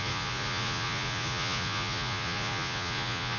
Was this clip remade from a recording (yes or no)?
yes